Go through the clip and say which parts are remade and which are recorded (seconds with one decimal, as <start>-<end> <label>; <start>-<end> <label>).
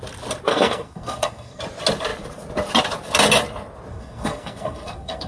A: 0.0-0.5 recorded; 0.5-1.6 remade; 1.6-3.9 recorded; 3.9-5.3 remade